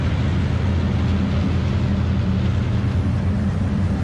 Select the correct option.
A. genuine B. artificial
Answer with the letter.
A